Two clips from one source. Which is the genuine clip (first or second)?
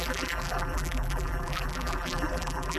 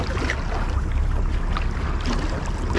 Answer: second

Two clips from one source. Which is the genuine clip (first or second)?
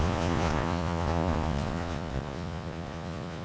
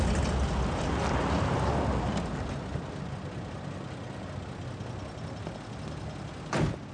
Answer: second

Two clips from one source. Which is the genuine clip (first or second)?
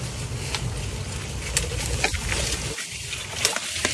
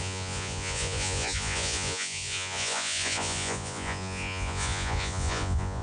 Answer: first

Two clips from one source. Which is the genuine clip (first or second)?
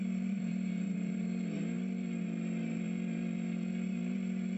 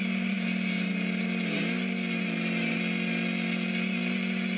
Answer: second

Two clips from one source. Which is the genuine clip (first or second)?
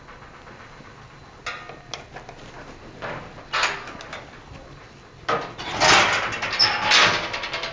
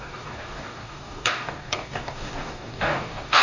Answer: first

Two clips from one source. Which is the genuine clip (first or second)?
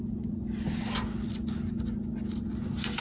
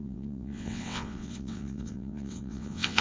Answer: first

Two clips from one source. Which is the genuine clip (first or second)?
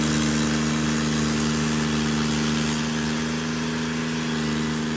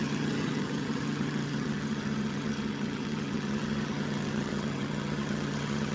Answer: first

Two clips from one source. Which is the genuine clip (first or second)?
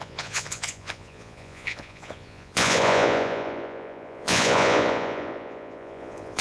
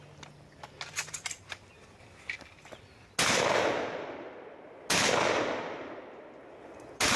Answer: second